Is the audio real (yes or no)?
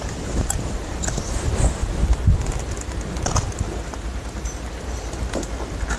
yes